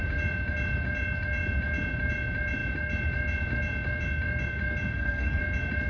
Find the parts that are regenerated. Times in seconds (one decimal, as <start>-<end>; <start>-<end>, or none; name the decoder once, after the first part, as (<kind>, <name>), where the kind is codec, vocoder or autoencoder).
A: 4.9-5.4 (codec, SNAC)